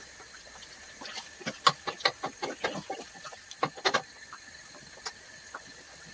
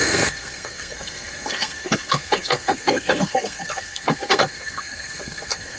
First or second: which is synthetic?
second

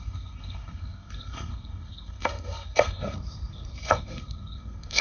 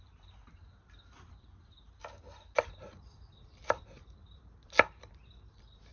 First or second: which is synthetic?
first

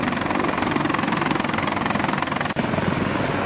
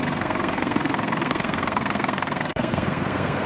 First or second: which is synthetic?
second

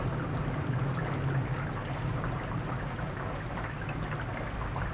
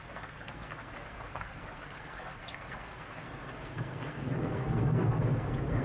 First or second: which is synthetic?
second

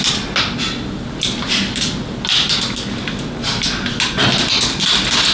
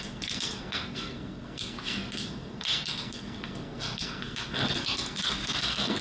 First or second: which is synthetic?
second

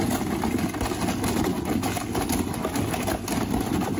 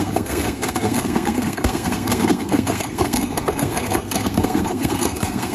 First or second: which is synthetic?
second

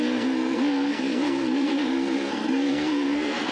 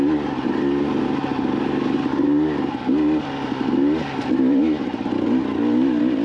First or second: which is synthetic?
first